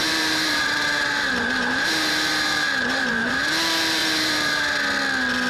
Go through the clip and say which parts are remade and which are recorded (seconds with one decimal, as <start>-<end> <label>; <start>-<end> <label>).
0.0-3.3 remade; 3.3-4.0 recorded; 4.0-4.6 remade; 4.6-5.5 recorded